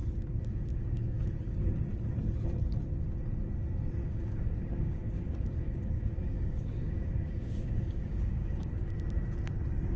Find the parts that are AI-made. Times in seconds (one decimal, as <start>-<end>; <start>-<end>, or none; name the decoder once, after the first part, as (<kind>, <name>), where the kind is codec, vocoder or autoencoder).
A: 0.7-1.7 (codec, DAC); 4.0-9.0